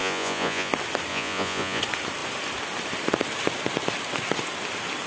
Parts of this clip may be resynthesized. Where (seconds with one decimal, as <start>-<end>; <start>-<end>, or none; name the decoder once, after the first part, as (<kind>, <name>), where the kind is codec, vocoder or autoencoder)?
0.0-0.7 (vocoder, Vocos); 1.1-1.8